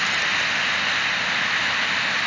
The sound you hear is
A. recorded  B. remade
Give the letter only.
A